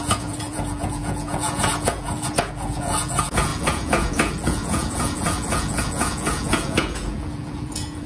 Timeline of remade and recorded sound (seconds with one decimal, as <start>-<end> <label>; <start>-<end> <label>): 0.0-8.1 remade